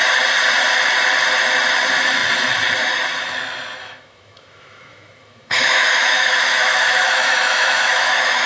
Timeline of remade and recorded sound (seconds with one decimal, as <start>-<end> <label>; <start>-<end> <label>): 0.0-3.8 recorded; 3.8-8.5 remade